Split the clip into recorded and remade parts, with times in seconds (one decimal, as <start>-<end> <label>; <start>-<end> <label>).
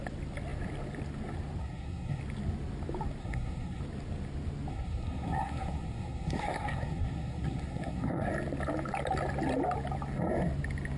0.0-1.6 recorded; 1.6-2.2 remade; 2.2-3.2 recorded; 3.2-3.8 remade; 3.8-4.7 recorded; 4.7-8.3 remade; 8.3-11.0 recorded